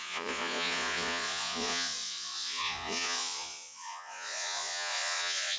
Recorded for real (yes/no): no